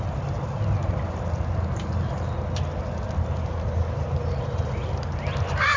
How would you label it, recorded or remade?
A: recorded